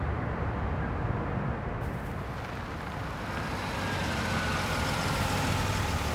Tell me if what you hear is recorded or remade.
recorded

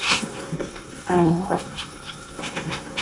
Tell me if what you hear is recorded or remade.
remade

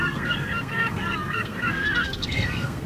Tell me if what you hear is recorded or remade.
remade